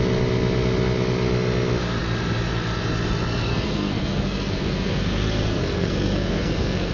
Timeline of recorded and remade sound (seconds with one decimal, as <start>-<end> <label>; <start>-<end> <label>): 0.0-3.5 recorded; 3.5-6.9 remade